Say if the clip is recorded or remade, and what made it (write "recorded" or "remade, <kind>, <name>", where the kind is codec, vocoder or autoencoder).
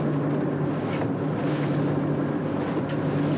recorded